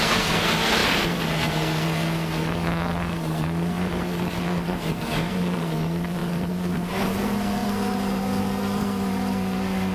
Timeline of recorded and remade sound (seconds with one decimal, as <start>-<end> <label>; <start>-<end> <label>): 0.0-9.9 remade